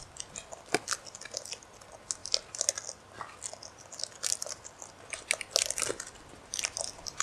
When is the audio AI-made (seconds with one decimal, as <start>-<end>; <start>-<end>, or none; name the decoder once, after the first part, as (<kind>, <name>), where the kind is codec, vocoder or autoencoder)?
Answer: none